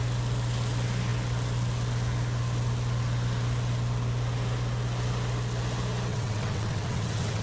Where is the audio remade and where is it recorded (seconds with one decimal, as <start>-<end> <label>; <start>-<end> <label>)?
0.0-6.1 recorded; 6.1-7.4 remade